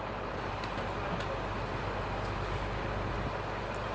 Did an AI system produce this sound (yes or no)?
no